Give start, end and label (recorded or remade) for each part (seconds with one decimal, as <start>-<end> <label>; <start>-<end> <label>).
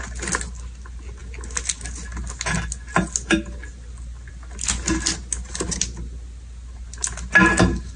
0.0-8.0 recorded